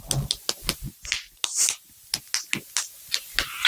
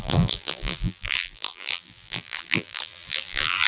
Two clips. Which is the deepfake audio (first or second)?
second